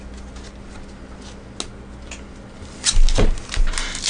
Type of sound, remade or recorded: recorded